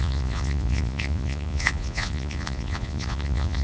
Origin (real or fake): fake